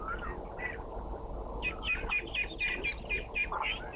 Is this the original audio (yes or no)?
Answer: yes